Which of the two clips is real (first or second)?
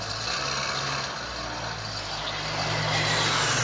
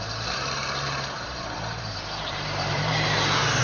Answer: first